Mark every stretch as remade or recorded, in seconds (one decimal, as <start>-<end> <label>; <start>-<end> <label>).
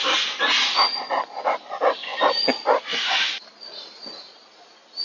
0.0-5.0 recorded